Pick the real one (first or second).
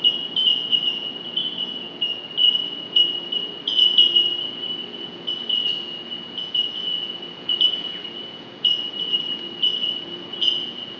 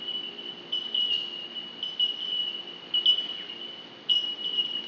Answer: second